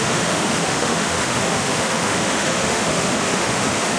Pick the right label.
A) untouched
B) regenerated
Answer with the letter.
B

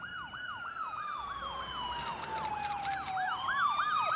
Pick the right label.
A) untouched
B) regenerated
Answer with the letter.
A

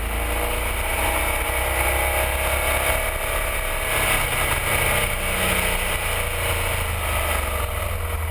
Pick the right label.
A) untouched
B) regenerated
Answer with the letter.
A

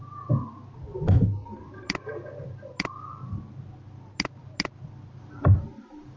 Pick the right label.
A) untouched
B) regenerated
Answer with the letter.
A